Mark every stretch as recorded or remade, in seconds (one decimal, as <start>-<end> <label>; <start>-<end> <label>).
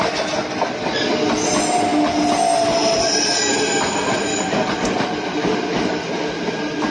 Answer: 0.0-6.9 recorded